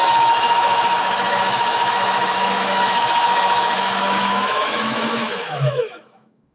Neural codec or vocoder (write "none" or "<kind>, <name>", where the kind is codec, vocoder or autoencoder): autoencoder, DAC-VAE